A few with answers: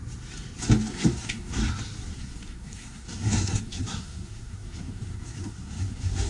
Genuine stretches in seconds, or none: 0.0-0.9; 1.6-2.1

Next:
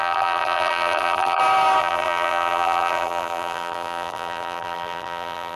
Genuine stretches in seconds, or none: 1.4-1.8

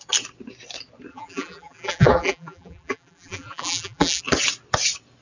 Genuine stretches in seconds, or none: 0.0-1.1; 4.2-5.2

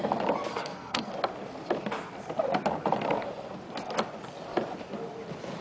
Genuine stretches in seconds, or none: 0.0-0.5; 1.1-5.6